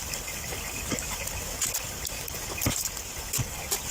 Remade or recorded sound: recorded